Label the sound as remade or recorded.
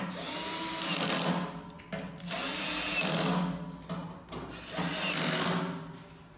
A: recorded